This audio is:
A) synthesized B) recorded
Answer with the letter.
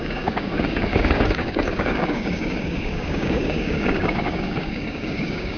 A